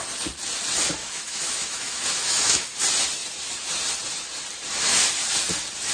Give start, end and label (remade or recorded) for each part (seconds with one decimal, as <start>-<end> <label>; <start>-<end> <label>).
0.0-1.0 recorded; 1.0-2.7 remade; 2.7-5.9 recorded